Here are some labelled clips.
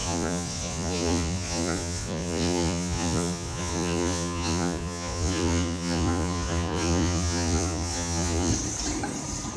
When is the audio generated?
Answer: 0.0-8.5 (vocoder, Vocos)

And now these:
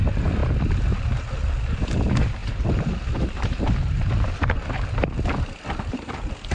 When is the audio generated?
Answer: 2.4-6.5 (vocoder, BigVGAN v2)

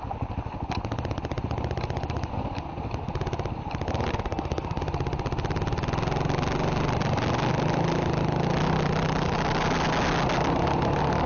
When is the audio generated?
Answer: 4.1-4.8 (codec, SNAC)

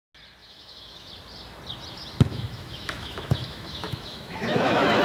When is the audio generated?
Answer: 0.4-1.1 (autoencoder, DAC-VAE); 2.3-5.0

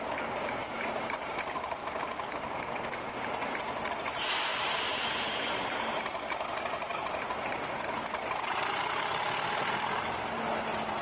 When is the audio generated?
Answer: 0.6-1.8 (vocoder, BigVGAN v2); 4.5-5.4